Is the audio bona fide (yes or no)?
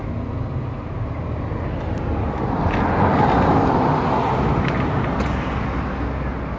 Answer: yes